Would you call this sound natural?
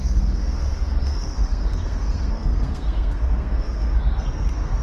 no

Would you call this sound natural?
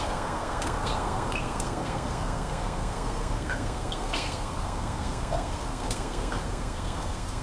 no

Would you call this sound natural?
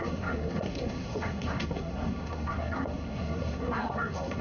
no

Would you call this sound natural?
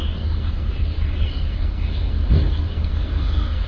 no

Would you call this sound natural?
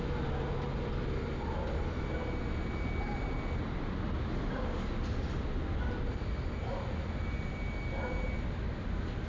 yes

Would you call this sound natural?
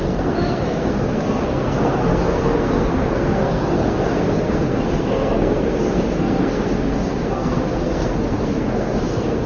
no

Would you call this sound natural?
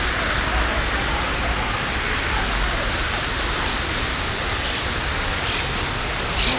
yes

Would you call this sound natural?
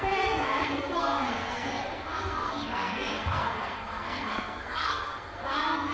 no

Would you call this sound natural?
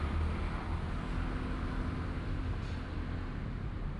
yes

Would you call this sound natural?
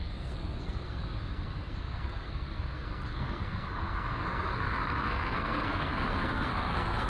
no